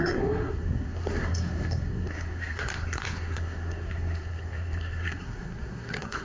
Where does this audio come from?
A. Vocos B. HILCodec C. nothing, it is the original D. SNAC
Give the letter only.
D